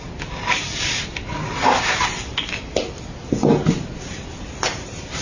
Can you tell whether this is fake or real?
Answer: real